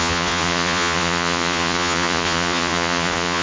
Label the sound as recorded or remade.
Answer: remade